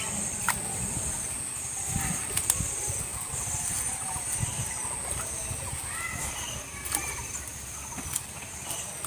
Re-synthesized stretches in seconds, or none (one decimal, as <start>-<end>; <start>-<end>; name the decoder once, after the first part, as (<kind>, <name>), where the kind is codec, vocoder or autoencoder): none